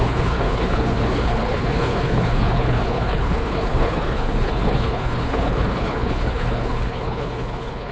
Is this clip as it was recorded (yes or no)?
no